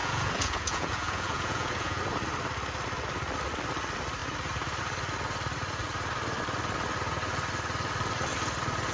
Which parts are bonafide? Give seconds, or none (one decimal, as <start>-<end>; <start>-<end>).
2.0-8.9